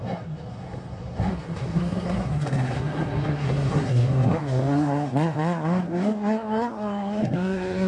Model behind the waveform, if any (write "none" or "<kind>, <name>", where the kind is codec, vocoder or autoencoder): codec, SNAC